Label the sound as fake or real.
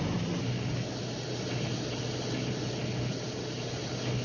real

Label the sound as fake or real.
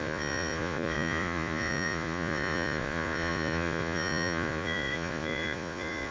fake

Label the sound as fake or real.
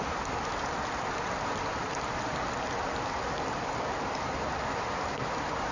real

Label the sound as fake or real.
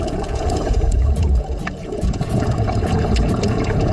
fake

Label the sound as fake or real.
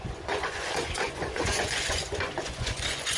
fake